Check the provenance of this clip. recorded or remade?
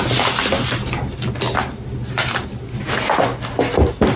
recorded